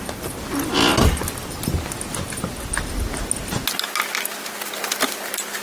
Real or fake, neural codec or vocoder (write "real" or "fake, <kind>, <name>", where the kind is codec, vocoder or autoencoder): real